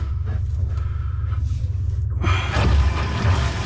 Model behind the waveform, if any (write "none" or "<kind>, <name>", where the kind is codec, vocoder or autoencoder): none